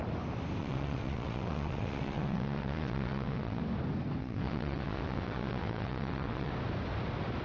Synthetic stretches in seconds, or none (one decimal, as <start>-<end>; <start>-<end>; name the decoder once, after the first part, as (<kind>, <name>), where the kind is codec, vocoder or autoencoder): 0.6-3.6 (vocoder, WaveNeXt); 4.2-6.5